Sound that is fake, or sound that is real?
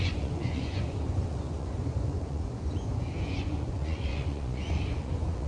fake